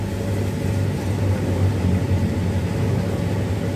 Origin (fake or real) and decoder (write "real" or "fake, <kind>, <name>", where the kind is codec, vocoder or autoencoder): real